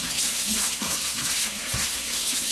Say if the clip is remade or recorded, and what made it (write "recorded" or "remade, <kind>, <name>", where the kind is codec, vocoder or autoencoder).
remade, codec, SNAC